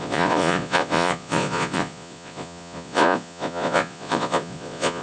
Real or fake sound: fake